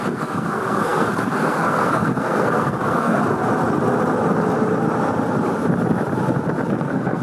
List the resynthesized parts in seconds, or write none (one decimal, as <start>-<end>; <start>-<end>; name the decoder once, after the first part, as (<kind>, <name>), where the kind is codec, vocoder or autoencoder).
0.0-3.2 (codec, SNAC); 6.7-7.2